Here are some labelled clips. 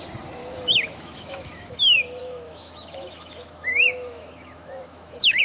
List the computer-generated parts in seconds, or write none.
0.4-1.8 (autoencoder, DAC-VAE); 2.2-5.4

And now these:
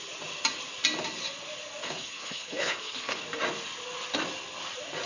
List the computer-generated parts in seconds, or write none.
1.8-3.2 (codec, HILCodec)

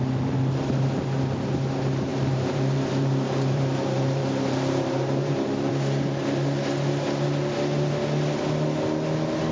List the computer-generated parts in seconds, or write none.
2.1-5.7 (vocoder, BigVGAN v2)

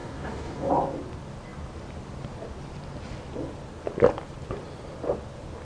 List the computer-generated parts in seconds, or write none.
0.0-0.7 (codec, DAC)